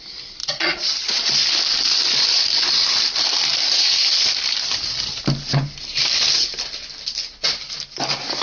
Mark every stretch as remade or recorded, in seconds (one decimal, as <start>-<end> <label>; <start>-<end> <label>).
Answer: 0.0-0.4 recorded; 0.4-1.2 remade; 1.2-8.4 recorded